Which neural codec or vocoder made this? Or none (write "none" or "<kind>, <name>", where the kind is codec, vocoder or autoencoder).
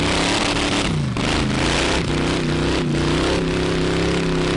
none